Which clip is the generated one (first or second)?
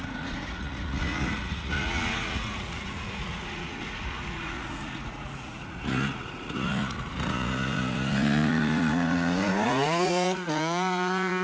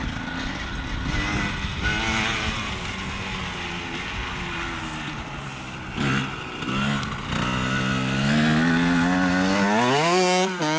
first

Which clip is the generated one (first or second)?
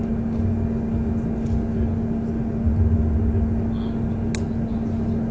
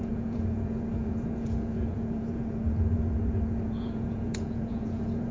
second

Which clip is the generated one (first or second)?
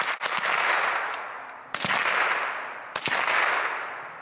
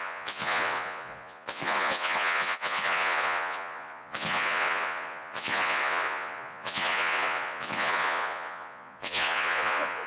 second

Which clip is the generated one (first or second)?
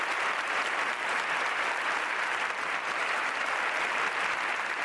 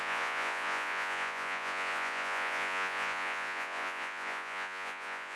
second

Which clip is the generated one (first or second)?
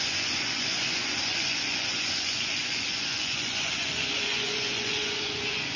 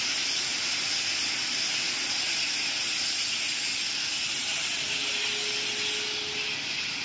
first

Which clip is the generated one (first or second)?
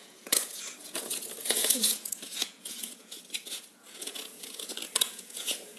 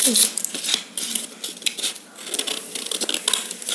first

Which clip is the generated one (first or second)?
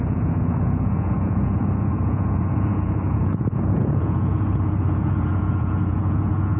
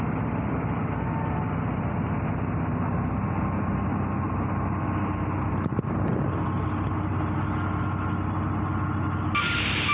first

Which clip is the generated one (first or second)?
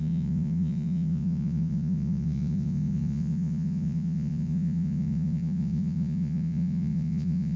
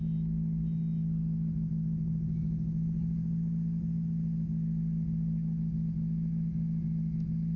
first